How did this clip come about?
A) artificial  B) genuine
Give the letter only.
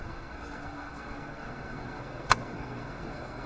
A